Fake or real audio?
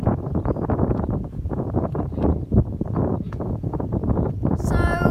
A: fake